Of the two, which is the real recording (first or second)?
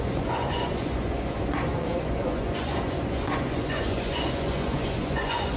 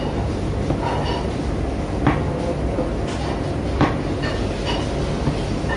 second